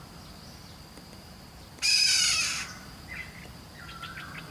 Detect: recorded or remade recorded